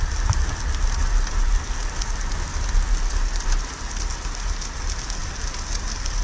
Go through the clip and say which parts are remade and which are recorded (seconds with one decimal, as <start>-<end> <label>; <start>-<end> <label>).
0.0-6.2 recorded

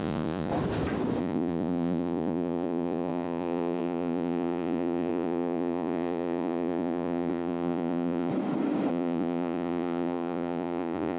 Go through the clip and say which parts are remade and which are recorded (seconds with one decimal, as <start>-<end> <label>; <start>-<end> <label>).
0.0-0.5 remade; 0.5-1.2 recorded; 1.2-8.3 remade; 8.3-8.9 recorded; 8.9-11.2 remade

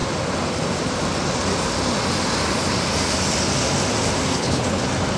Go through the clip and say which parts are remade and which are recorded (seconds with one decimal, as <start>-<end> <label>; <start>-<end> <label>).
0.0-4.3 recorded; 4.3-4.8 remade; 4.8-5.2 recorded

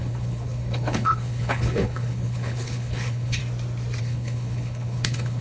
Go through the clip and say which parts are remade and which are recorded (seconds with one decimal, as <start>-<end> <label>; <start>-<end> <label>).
0.0-3.4 remade; 3.4-4.0 recorded; 4.0-5.4 remade

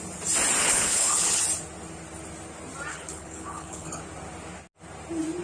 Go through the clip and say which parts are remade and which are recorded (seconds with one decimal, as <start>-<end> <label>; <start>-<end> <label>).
0.0-0.6 recorded; 0.6-1.4 remade; 1.4-2.9 recorded; 2.9-4.0 remade; 4.0-5.4 recorded

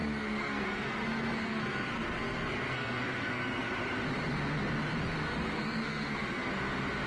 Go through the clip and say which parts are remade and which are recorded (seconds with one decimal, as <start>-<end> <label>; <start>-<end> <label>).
0.0-3.7 remade; 3.7-5.3 recorded; 5.3-6.5 remade; 6.5-7.1 recorded

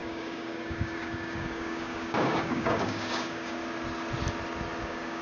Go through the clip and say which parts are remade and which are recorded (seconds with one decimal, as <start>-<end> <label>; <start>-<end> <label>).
0.0-3.6 remade; 3.6-4.8 recorded; 4.8-5.2 remade